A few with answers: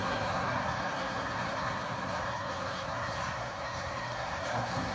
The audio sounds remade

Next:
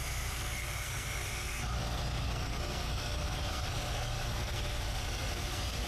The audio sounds remade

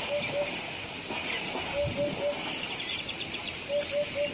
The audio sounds recorded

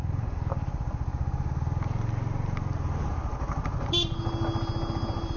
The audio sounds recorded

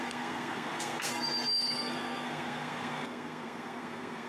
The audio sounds remade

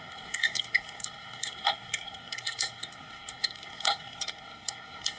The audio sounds remade